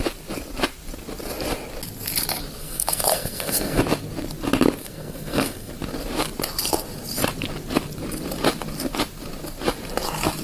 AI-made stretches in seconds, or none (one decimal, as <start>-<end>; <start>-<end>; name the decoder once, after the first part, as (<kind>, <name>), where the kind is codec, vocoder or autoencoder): 2.6-3.8 (codec, SNAC); 4.8-5.7